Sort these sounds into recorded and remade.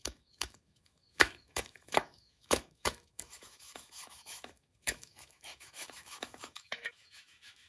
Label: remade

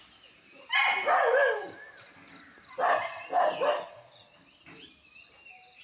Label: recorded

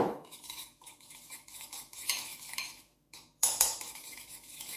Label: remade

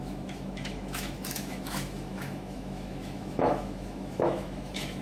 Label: remade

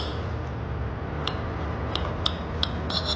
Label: recorded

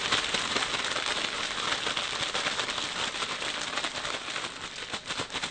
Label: recorded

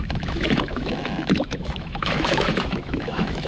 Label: remade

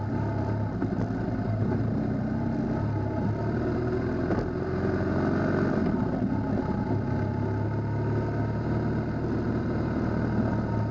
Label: recorded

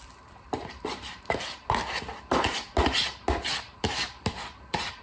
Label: recorded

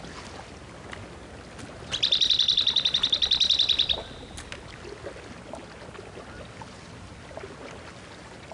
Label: recorded